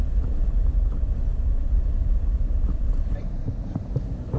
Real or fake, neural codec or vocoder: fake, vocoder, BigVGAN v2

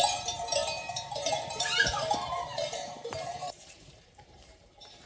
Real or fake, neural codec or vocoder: fake, vocoder, BigVGAN v2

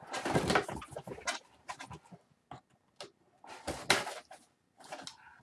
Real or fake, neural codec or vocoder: real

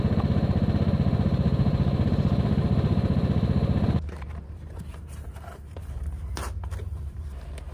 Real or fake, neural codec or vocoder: fake, vocoder, BigVGAN v2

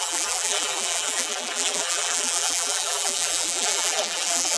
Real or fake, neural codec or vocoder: fake, vocoder, BigVGAN v2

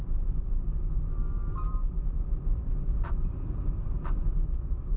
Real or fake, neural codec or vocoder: fake, vocoder, BigVGAN v2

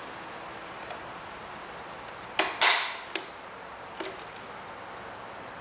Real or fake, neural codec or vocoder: real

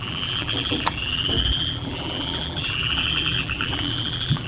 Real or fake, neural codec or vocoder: fake, vocoder, BigVGAN v2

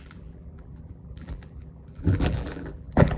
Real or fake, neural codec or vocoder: fake, vocoder, BigVGAN v2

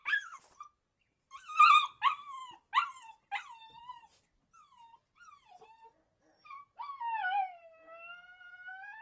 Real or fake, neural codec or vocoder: real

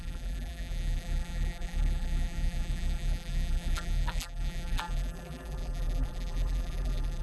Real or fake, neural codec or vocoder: fake, vocoder, BigVGAN v2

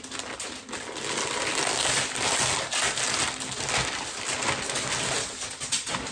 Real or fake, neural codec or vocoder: real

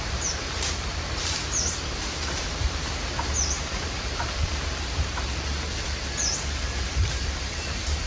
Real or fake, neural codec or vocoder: fake, vocoder, BigVGAN v2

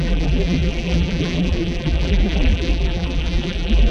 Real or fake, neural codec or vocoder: fake, vocoder, BigVGAN v2